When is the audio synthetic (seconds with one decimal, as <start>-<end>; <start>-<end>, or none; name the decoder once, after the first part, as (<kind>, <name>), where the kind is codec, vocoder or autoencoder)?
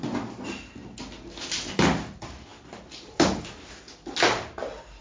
none